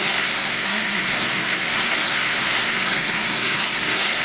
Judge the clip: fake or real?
fake